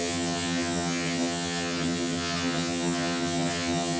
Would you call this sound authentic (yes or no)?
no